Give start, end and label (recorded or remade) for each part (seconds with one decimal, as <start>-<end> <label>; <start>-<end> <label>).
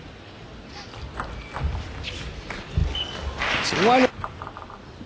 0.0-5.1 recorded